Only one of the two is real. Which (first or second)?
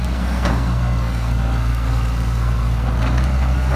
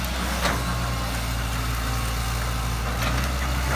second